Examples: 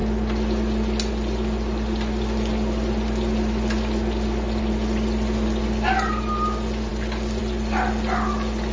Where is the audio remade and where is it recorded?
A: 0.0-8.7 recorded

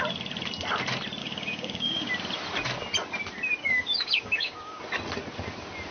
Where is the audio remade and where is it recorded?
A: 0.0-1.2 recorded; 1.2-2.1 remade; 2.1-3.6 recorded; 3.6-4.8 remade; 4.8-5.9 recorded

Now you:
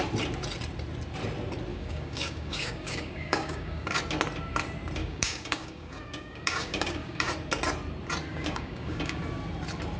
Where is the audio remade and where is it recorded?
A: 0.0-1.7 recorded; 1.7-4.0 remade; 4.0-5.0 recorded; 5.0-7.3 remade; 7.3-8.3 recorded; 8.3-9.2 remade; 9.2-10.0 recorded